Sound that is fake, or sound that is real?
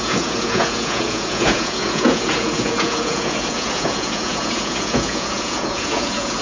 fake